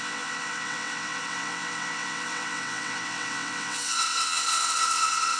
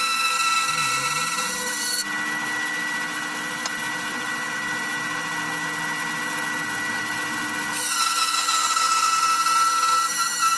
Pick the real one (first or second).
second